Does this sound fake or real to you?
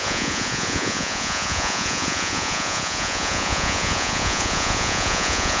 fake